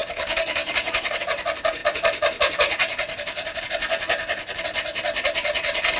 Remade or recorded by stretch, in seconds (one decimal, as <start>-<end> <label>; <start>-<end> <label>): 0.0-1.2 remade; 1.2-6.0 recorded